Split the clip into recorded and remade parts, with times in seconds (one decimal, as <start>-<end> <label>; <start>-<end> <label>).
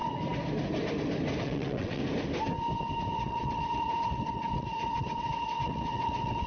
0.0-1.4 recorded; 1.4-2.0 remade; 2.0-3.1 recorded; 3.1-6.5 remade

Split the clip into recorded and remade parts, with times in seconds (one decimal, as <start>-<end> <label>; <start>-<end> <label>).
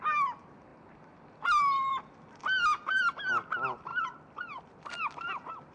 0.0-0.7 recorded; 0.7-3.1 remade; 3.1-3.9 recorded; 3.9-4.6 remade; 4.6-5.7 recorded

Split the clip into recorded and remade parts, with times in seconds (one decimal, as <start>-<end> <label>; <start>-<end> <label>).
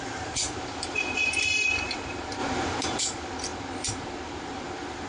0.0-3.5 remade; 3.5-4.3 recorded; 4.3-5.1 remade